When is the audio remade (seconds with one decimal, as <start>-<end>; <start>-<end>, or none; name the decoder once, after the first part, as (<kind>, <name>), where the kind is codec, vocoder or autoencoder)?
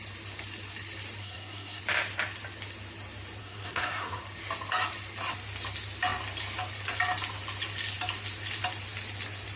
1.2-1.8 (codec, SNAC); 3.4-4.2